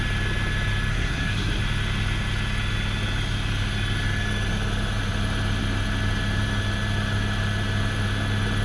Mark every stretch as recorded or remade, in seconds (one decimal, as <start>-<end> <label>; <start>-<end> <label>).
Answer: 0.0-0.9 recorded; 0.9-1.6 remade; 1.6-8.6 recorded